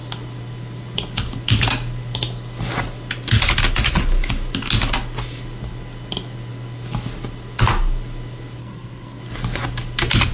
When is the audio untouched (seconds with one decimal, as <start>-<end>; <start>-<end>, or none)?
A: 0.0-8.6; 9.2-10.3